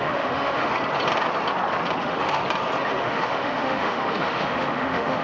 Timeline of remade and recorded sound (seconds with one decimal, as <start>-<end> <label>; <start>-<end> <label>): 0.0-0.7 remade; 0.7-2.0 recorded; 2.0-2.4 remade; 2.4-3.0 recorded; 3.0-5.2 remade